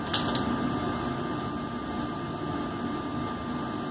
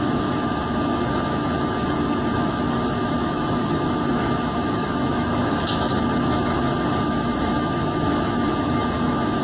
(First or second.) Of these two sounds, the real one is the first